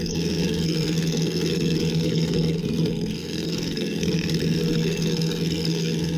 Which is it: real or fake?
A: fake